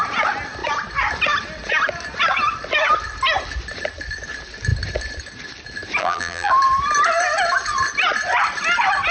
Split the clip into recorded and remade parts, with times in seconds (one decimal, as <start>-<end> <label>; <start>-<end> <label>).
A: 0.0-6.0 recorded; 6.0-6.5 remade; 6.5-9.1 recorded